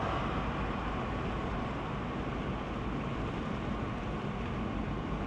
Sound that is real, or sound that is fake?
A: real